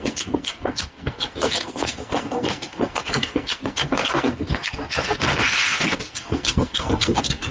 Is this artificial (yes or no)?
yes